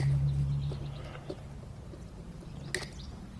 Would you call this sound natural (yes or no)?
yes